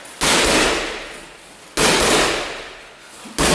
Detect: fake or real real